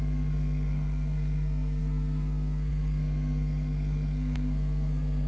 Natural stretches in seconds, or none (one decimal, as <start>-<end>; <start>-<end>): none